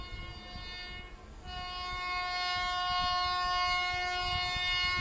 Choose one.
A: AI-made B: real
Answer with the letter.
B